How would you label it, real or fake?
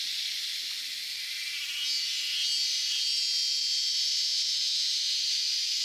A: real